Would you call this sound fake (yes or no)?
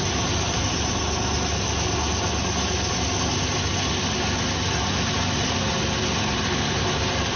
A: no